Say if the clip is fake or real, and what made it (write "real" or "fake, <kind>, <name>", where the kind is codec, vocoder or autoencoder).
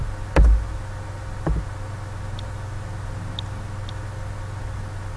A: real